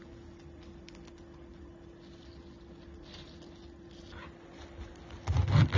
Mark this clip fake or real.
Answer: real